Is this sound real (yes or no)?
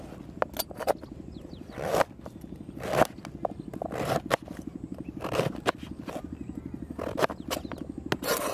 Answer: yes